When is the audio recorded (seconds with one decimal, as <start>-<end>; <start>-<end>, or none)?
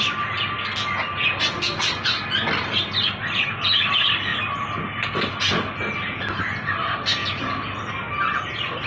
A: 0.0-8.9